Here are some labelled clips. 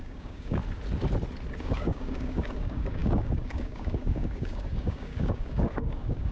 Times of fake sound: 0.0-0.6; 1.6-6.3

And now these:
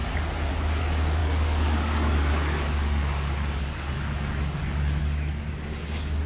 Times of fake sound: 0.5-6.3

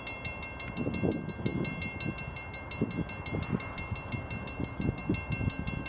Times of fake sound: none

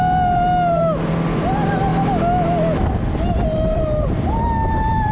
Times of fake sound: none

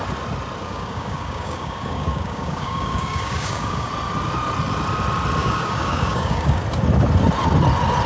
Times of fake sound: 0.6-3.9; 5.4-6.6